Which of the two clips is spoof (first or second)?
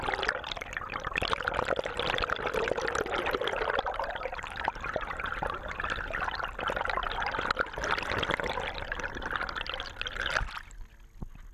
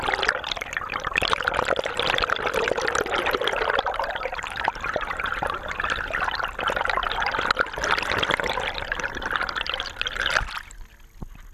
second